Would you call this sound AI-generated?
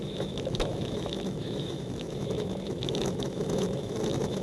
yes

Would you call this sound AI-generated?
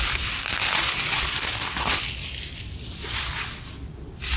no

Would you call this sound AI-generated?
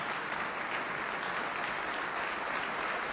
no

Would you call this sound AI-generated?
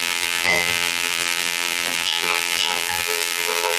yes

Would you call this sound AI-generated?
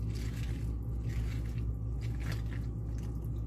no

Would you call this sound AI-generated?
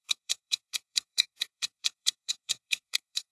yes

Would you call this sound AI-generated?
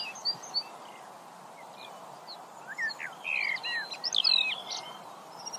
no